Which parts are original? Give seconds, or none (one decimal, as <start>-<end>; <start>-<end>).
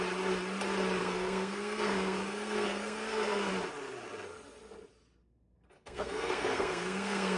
0.0-1.0; 3.5-5.2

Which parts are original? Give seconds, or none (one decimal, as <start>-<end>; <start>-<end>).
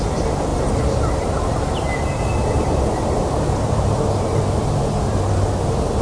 0.0-2.1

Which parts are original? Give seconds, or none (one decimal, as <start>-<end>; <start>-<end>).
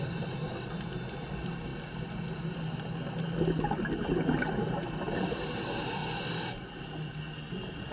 0.0-7.9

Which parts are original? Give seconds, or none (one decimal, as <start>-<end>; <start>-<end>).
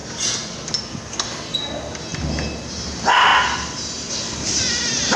0.0-5.2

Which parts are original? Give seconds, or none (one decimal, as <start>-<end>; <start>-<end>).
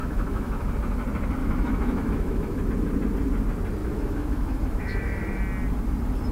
0.7-1.4; 2.6-3.8; 5.4-6.3